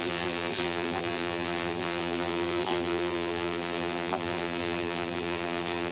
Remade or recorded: remade